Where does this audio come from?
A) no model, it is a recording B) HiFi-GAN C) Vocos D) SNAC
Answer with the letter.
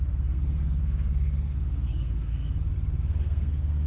D